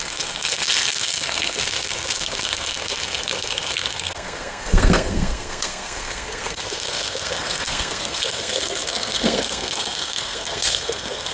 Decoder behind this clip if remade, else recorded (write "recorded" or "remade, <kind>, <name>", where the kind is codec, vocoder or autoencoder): remade, codec, SNAC